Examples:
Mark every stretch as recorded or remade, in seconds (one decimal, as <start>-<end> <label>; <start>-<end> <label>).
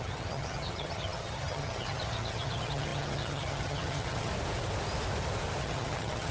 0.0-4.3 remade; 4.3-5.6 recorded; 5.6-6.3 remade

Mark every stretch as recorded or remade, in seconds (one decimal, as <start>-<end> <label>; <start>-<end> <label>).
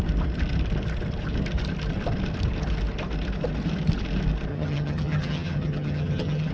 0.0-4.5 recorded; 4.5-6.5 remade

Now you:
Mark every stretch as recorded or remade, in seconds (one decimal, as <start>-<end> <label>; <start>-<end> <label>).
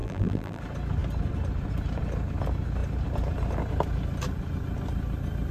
0.0-0.6 remade; 0.6-5.5 recorded